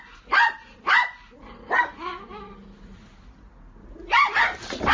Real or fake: real